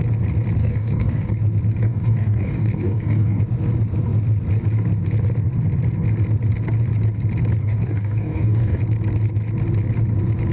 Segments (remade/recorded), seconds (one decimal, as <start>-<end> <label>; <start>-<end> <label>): 0.0-0.6 recorded; 0.6-1.4 remade; 1.4-1.8 recorded; 1.8-3.4 remade; 3.4-7.6 recorded; 7.6-8.8 remade; 8.8-10.5 recorded